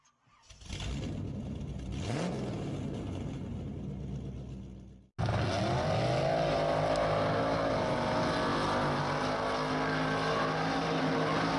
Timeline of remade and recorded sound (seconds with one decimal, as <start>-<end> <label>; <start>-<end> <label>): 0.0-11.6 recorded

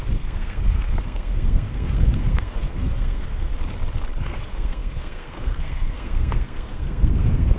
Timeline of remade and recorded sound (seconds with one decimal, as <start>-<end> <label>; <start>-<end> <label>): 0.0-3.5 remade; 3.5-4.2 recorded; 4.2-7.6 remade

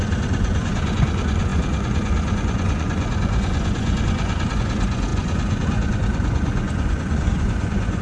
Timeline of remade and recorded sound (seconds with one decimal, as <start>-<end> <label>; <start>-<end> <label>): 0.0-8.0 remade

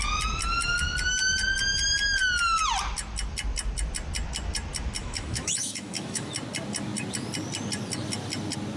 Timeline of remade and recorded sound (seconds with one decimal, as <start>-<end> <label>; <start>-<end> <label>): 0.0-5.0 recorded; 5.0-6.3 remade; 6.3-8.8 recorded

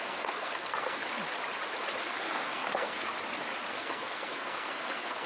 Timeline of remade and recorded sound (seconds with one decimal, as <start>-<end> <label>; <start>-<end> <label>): 0.0-1.0 remade; 1.0-2.0 recorded; 2.0-3.1 remade; 3.1-3.7 recorded; 3.7-5.3 remade